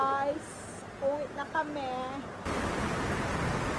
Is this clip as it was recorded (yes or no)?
yes